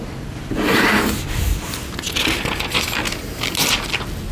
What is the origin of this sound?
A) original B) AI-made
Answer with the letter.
A